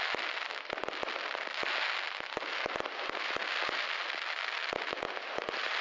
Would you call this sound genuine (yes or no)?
yes